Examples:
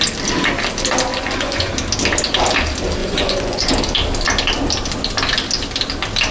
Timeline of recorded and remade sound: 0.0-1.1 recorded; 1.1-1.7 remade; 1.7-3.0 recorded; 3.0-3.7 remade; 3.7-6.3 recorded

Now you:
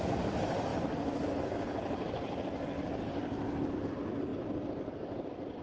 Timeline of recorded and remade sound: 0.0-5.6 recorded

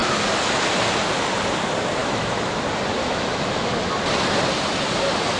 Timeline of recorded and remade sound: 0.0-2.0 recorded; 2.0-2.6 remade; 2.6-3.0 recorded; 3.0-3.7 remade; 3.7-5.4 recorded

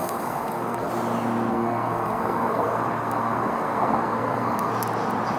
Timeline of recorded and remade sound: 0.0-0.9 remade; 0.9-1.5 recorded; 1.5-4.7 remade; 4.7-5.4 recorded

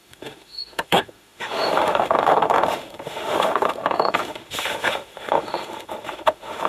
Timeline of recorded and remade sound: 0.0-6.7 remade